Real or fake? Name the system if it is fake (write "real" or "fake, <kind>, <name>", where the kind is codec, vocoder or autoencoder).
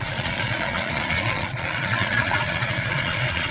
fake, vocoder, Vocos